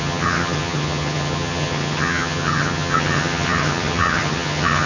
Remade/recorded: remade